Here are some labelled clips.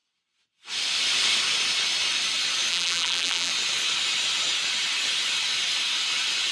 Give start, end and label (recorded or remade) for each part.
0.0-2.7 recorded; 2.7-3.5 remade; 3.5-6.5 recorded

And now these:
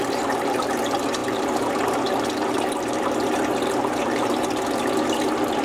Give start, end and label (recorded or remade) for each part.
0.0-5.6 remade

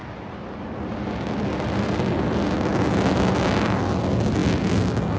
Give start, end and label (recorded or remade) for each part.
0.0-5.2 recorded

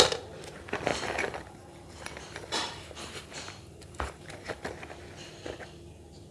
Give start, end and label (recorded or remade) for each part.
0.0-0.9 recorded; 0.9-4.7 remade; 4.7-6.3 recorded

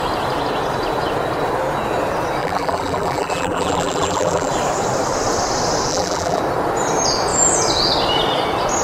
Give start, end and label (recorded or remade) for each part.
0.0-2.4 recorded; 2.4-4.5 remade; 4.5-5.9 recorded; 5.9-6.4 remade; 6.4-8.8 recorded

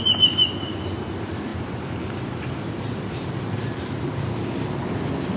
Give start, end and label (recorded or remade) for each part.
0.0-1.5 recorded; 1.5-4.3 remade; 4.3-5.4 recorded

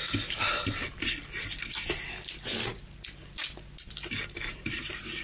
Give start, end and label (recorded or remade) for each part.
0.0-2.7 remade; 2.7-4.6 recorded; 4.6-5.2 remade